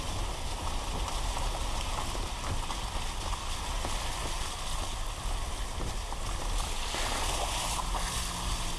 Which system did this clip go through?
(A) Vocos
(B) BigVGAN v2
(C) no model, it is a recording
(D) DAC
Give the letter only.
C